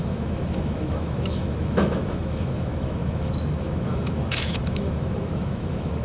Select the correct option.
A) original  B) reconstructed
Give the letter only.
B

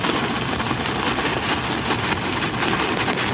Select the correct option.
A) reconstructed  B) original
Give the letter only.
B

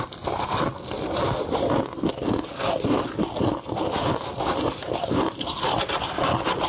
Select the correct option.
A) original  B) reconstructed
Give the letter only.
A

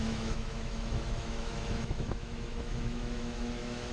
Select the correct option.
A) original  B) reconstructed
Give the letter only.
B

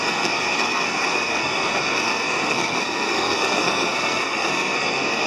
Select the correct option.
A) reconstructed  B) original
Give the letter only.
A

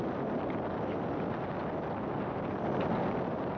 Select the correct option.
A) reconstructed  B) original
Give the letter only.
B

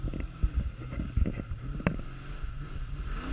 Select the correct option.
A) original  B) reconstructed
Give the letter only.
A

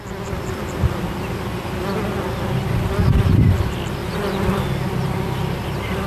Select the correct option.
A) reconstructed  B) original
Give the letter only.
B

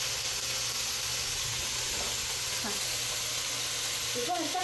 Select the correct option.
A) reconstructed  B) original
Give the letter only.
B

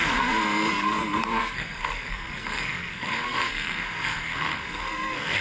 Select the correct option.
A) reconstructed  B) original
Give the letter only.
A